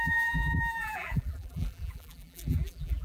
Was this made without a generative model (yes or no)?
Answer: no